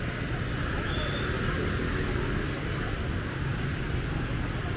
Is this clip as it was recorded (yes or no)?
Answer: yes